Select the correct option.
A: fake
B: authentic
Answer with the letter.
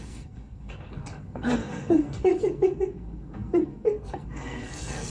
A